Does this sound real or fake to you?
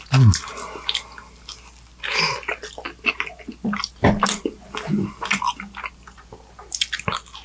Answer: real